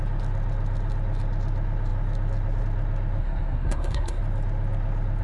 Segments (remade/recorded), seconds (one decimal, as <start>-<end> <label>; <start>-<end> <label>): 0.0-3.2 recorded; 3.2-4.2 remade; 4.2-5.2 recorded